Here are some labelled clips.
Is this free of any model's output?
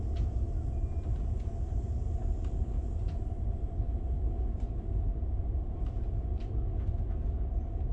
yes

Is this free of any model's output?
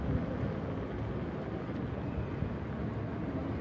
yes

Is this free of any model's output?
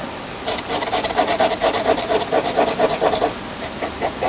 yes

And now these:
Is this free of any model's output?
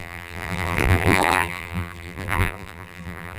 no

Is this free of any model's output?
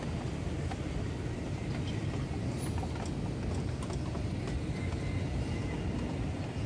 yes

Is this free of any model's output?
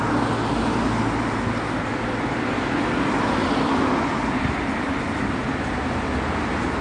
yes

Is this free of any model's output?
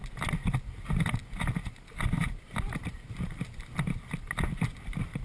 yes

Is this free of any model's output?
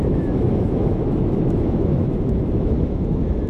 no